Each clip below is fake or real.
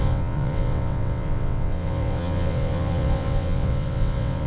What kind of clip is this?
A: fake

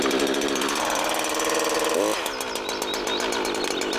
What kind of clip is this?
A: real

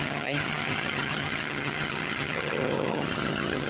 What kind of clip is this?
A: fake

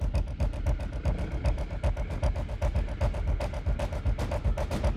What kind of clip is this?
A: real